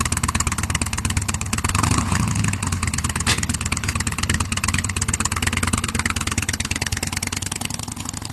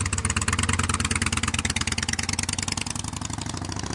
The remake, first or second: first